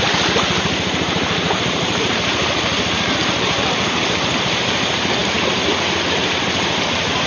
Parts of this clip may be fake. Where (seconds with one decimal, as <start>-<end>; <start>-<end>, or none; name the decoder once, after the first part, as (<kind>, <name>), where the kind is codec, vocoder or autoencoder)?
0.0-7.3 (vocoder, BigVGAN v2)